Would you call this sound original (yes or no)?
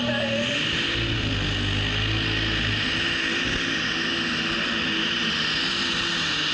yes